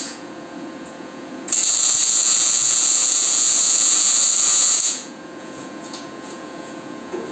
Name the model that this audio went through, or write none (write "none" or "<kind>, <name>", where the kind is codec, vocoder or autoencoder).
vocoder, Vocos